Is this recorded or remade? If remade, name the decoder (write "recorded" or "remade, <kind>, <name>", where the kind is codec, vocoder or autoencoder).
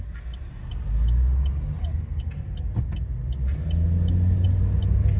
recorded